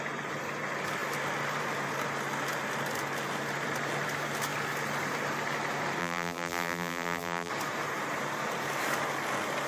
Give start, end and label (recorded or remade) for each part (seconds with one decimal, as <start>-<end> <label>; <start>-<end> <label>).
0.0-6.0 recorded; 6.0-7.5 remade; 7.5-9.7 recorded